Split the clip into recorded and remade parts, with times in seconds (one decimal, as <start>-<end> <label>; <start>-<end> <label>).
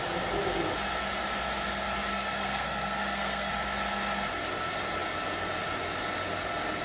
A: 0.0-2.1 recorded; 2.1-3.5 remade; 3.5-6.8 recorded